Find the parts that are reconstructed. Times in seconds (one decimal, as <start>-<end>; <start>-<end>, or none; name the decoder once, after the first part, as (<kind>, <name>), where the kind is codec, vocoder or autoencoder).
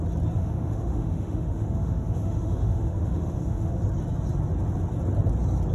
0.4-3.8 (autoencoder, DAC-VAE)